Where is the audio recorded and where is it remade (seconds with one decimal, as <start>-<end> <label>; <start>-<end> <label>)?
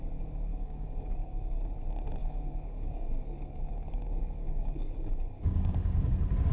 0.0-0.5 recorded; 0.5-1.6 remade; 1.6-2.2 recorded; 2.2-6.1 remade; 6.1-6.5 recorded